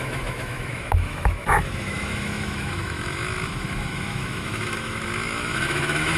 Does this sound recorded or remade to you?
remade